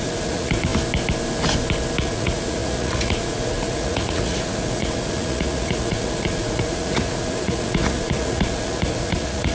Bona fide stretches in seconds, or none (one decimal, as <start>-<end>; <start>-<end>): 0.7-2.0